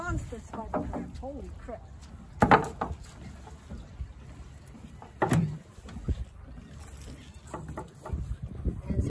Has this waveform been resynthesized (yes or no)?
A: no